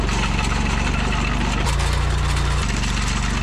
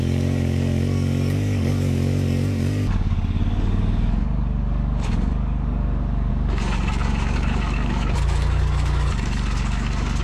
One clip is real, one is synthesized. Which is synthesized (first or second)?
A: second